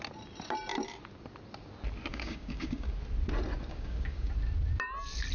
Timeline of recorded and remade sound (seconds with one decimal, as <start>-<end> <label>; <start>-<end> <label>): 0.0-2.1 recorded; 2.1-2.9 remade; 2.9-3.7 recorded; 3.7-4.3 remade; 4.3-5.3 recorded